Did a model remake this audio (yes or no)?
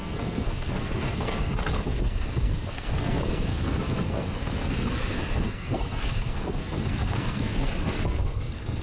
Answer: yes